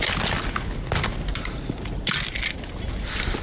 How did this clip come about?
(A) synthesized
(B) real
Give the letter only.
B